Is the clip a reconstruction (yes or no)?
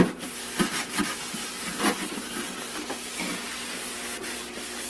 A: no